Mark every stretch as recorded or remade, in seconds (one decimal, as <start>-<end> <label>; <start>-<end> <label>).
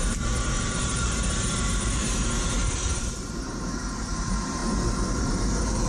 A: 0.0-4.6 remade; 4.6-5.2 recorded; 5.2-5.9 remade